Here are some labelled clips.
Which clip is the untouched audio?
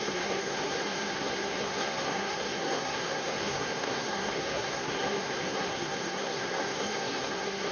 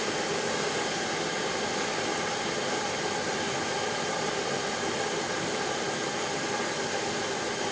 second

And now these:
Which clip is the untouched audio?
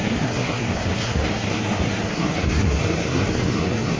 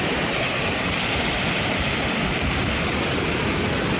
second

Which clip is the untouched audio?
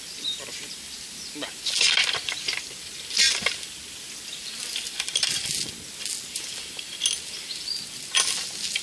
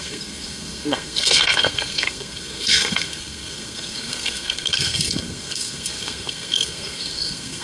first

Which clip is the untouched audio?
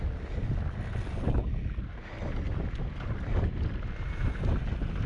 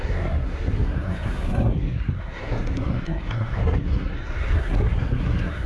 first